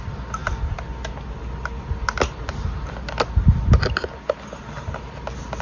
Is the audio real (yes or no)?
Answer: yes